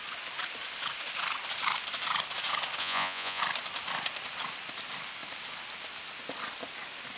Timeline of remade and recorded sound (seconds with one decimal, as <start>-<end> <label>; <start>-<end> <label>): 0.0-2.8 recorded; 2.8-3.4 remade; 3.4-7.2 recorded